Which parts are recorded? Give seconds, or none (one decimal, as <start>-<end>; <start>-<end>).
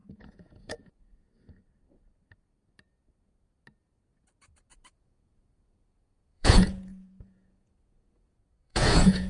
1.3-4.7